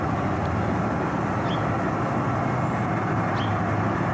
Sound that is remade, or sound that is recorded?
recorded